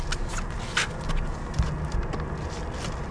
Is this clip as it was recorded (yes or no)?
yes